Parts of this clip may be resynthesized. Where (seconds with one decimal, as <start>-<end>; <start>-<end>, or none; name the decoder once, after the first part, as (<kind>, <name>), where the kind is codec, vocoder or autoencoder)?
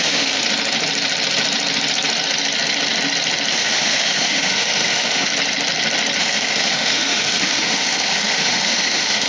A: 0.0-0.4 (autoencoder, DAC-VAE); 3.5-5.3; 6.2-9.3